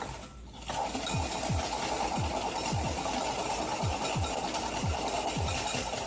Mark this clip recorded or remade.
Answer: recorded